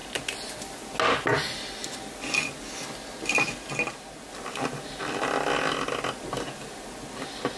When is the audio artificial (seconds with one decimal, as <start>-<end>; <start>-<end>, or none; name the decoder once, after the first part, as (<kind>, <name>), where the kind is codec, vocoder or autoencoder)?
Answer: none